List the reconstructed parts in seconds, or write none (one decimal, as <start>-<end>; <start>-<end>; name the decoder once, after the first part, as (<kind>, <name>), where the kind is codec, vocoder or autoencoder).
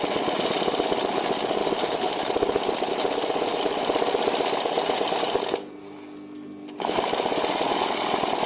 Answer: none